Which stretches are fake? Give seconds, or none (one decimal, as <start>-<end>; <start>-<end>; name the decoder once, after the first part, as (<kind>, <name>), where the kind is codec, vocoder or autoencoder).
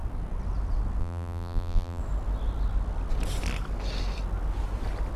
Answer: 1.0-2.0 (vocoder, BigVGAN v2)